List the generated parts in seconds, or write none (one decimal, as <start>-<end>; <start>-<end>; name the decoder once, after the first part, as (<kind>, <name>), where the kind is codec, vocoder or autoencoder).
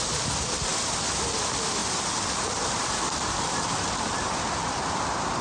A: none